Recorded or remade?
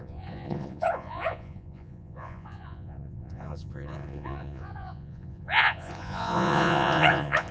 remade